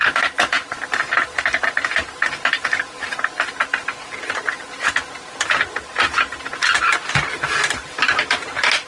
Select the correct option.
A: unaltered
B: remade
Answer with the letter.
A